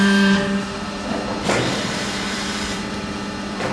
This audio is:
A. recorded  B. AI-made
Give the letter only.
B